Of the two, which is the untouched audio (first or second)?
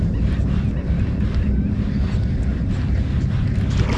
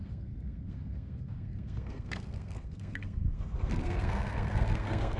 first